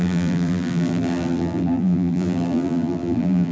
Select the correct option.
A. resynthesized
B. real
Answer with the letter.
A